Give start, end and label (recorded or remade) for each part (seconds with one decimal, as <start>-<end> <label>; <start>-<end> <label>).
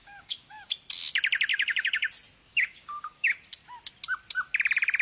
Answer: 0.0-0.7 remade; 0.7-1.5 recorded; 1.5-2.1 remade; 2.1-2.5 recorded; 2.5-3.4 remade; 3.4-5.0 recorded